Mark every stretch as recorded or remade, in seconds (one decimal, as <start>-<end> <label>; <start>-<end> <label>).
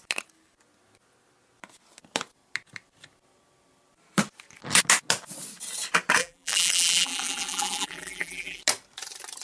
0.0-6.2 recorded; 6.2-8.6 remade; 8.6-9.4 recorded